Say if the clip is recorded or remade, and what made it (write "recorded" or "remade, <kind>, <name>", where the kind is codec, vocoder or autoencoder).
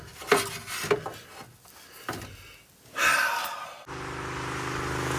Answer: recorded